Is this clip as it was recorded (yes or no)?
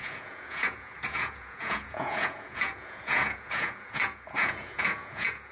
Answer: no